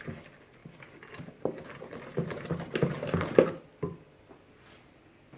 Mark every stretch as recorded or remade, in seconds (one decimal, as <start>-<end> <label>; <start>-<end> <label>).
0.0-5.4 recorded